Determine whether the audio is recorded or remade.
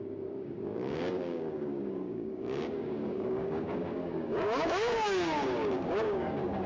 remade